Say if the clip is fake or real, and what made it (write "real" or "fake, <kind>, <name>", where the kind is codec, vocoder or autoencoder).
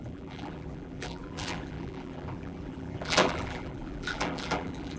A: fake, vocoder, BigVGAN v2